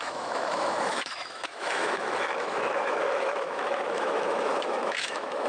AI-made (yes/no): yes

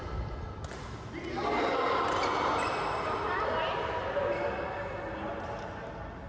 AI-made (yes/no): no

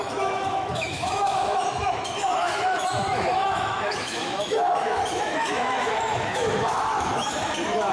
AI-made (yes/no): yes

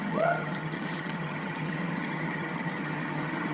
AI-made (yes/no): yes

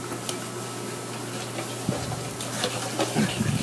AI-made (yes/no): no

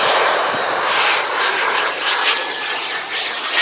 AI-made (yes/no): yes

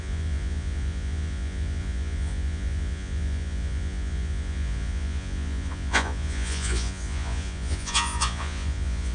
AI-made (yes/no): yes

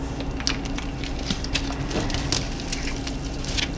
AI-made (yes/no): no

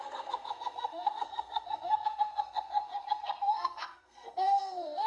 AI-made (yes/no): yes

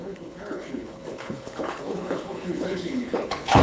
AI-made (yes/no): yes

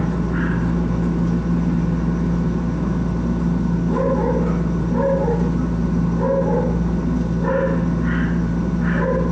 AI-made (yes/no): no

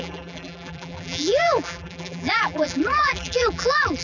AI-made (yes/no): yes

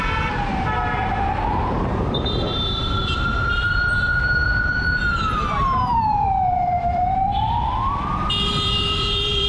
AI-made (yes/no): yes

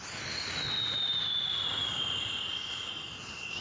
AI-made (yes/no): no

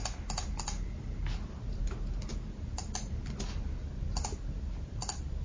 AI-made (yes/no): no